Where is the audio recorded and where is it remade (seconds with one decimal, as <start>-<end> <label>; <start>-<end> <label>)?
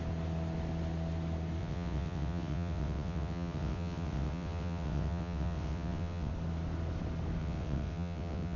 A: 0.0-1.6 recorded; 1.6-6.3 remade; 6.3-7.4 recorded; 7.4-8.6 remade